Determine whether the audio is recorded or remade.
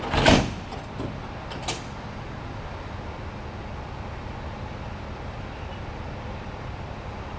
recorded